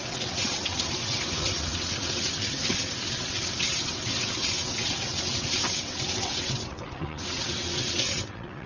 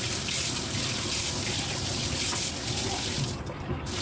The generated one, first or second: first